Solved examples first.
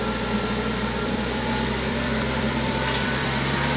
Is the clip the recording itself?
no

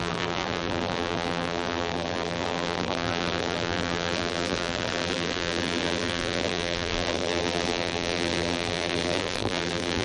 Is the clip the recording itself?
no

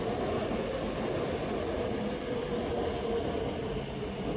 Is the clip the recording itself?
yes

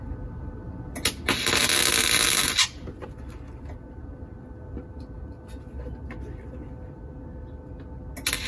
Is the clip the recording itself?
yes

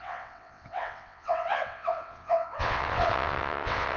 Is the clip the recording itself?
no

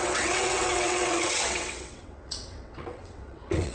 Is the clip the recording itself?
no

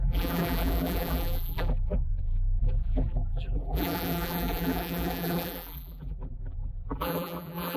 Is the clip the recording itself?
no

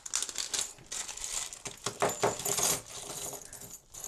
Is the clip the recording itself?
yes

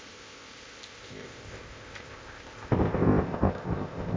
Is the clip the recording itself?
no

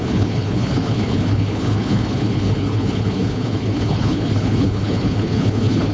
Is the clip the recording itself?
no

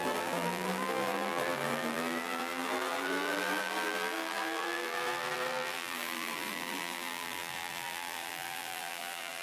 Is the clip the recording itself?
no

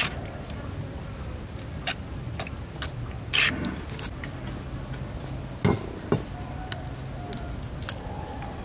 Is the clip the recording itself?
yes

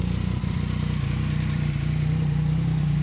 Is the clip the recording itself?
no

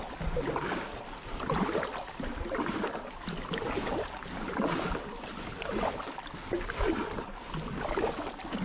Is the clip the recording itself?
yes